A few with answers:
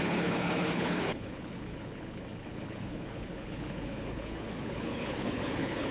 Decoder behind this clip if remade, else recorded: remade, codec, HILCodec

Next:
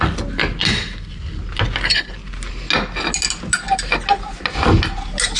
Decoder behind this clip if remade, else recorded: recorded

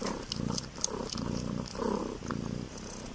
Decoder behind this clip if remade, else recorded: recorded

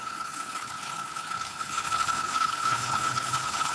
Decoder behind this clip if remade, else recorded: remade, codec, HILCodec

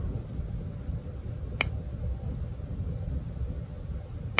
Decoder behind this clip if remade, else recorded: recorded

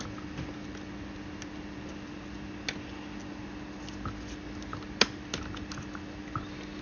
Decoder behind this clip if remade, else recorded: recorded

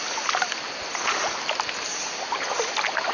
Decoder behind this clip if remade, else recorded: recorded